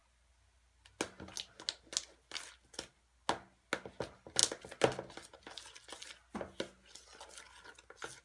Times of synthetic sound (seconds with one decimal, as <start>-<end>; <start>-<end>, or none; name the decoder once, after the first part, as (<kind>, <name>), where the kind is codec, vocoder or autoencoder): none